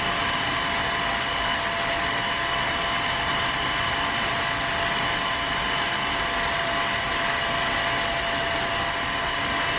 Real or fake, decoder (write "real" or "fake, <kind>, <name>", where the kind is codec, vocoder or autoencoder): real